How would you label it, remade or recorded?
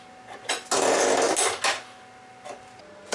recorded